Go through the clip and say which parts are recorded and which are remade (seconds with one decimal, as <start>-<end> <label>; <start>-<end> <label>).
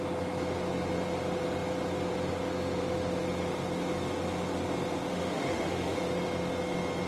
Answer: 0.0-5.1 recorded; 5.1-6.0 remade; 6.0-7.1 recorded